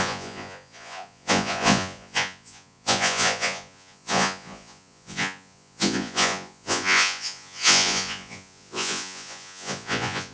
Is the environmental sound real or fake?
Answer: fake